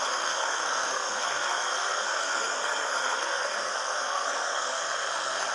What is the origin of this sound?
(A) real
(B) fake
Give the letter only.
B